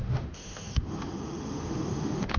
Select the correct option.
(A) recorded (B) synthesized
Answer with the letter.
B